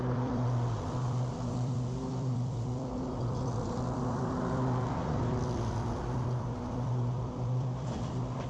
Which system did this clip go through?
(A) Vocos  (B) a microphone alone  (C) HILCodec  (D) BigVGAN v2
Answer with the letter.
D